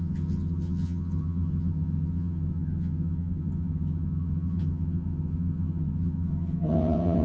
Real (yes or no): no